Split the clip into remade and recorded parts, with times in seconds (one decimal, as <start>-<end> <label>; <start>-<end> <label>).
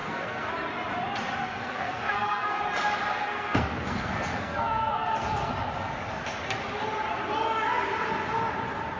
0.0-0.5 remade; 0.5-1.4 recorded; 1.4-2.6 remade; 2.6-3.1 recorded; 3.1-5.5 remade; 5.5-9.0 recorded